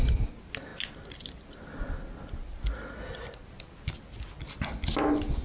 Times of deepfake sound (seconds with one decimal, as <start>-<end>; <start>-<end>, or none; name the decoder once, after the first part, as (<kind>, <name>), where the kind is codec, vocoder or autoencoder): none